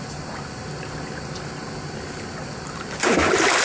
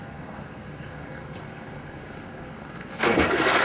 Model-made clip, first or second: second